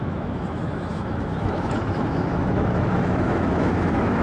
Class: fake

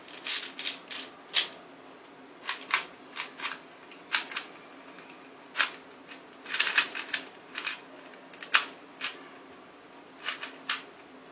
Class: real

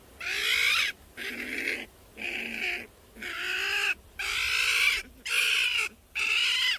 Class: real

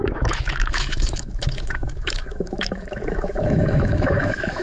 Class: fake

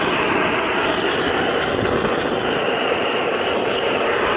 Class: real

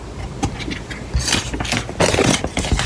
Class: real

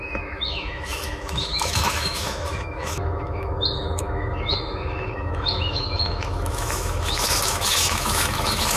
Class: fake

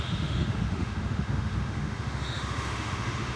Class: fake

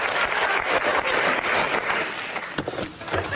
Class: real